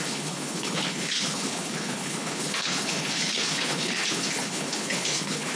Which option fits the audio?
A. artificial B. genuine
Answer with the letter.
A